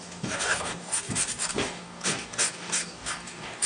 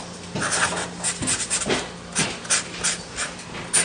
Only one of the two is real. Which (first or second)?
second